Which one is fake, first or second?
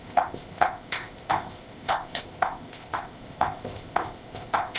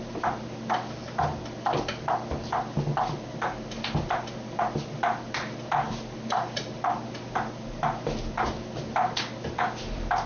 first